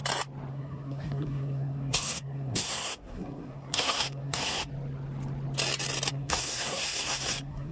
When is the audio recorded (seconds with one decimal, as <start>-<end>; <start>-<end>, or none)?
0.0-0.5; 4.7-6.1